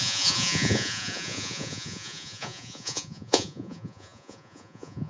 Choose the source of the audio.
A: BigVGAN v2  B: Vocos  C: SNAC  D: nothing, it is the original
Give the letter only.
B